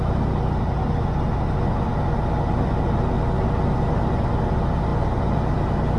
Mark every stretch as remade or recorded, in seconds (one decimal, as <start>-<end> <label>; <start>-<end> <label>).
0.0-6.0 recorded